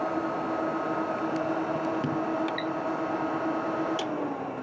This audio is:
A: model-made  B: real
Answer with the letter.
B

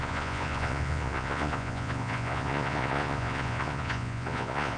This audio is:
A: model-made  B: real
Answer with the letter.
A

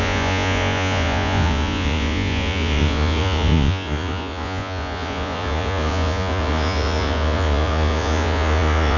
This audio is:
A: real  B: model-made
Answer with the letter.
B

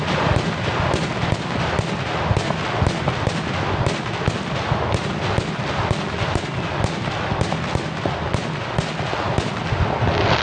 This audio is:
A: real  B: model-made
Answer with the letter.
A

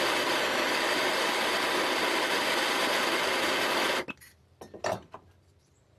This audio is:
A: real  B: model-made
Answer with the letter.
A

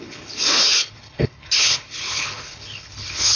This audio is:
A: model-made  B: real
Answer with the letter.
A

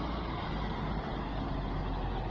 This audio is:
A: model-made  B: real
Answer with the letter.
B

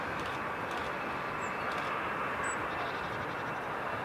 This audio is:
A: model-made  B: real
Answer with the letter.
B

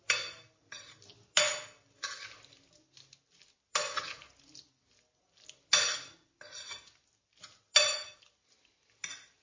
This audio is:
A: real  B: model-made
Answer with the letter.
A